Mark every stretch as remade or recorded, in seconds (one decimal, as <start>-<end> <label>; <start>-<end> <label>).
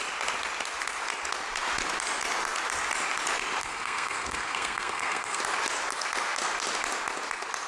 0.0-3.6 recorded; 3.6-5.4 remade; 5.4-7.7 recorded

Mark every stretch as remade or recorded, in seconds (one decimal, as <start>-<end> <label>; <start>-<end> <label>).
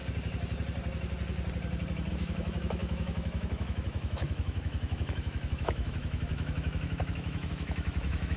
0.0-2.1 recorded; 2.1-8.4 remade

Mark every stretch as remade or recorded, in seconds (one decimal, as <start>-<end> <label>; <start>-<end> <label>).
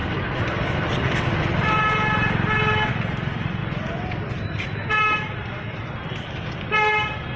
0.0-7.4 recorded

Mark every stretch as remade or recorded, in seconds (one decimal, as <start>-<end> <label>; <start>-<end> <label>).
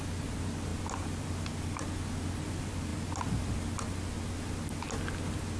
0.0-5.6 recorded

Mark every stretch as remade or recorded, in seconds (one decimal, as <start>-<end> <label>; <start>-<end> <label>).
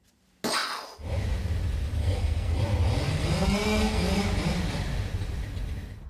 0.0-2.0 recorded; 2.0-2.6 remade; 2.6-3.1 recorded; 3.1-4.2 remade; 4.2-6.1 recorded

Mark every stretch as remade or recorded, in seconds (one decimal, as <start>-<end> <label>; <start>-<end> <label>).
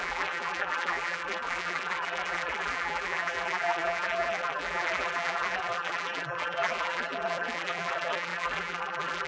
0.0-9.3 remade